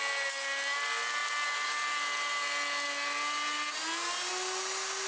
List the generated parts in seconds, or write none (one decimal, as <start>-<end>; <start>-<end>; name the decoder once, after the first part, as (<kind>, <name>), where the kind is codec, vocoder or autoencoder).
none